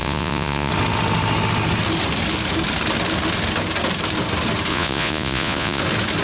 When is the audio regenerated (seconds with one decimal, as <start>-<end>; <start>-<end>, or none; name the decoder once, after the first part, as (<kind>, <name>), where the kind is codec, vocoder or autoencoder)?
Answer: 0.0-0.7 (vocoder, Vocos); 4.7-5.8

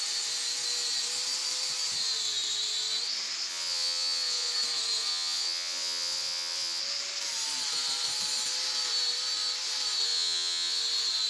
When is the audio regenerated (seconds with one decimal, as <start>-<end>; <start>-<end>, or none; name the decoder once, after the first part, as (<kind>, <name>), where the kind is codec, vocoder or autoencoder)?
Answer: 3.5-4.5 (vocoder, WaveNeXt); 5.1-6.8; 10.1-10.8